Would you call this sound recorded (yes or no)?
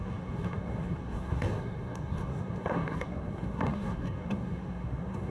no